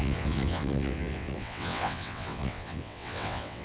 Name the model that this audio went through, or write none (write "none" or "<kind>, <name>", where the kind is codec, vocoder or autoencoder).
vocoder, WaveNeXt